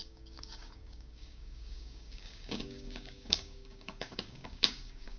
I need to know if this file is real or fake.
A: fake